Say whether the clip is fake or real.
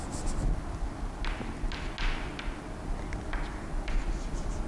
real